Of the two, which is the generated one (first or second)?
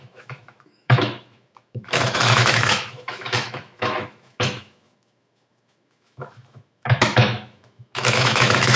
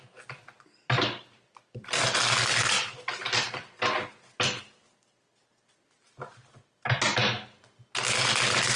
first